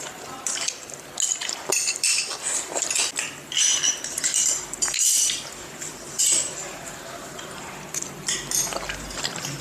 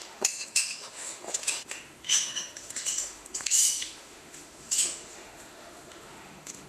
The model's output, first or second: second